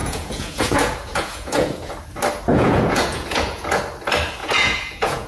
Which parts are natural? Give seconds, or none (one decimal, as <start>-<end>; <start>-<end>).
1.9-2.5; 3.8-4.4